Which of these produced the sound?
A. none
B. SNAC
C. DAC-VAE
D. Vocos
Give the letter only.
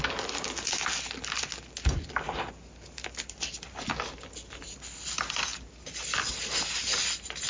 A